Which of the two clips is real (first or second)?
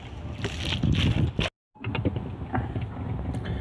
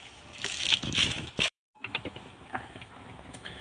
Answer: first